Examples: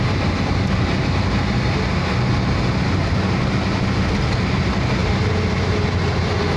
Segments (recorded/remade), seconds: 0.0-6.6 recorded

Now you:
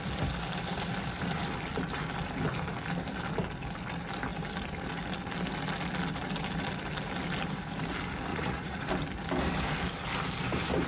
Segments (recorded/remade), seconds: 0.0-8.3 recorded; 8.3-8.9 remade; 8.9-10.9 recorded

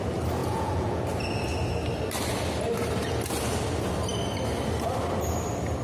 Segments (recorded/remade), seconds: 0.0-0.4 recorded; 0.4-1.0 remade; 1.0-5.8 recorded

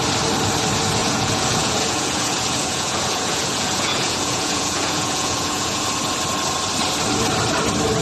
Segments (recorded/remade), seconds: 0.0-1.0 recorded; 1.0-5.8 remade; 5.8-8.0 recorded